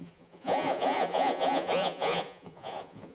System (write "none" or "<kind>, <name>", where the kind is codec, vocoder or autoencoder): vocoder, Vocos